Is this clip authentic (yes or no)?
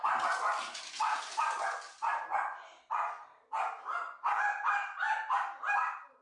yes